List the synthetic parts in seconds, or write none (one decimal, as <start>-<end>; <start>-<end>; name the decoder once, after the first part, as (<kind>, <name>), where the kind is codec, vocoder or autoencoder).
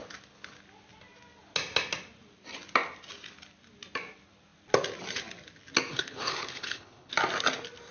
5.9-7.1 (codec, HILCodec)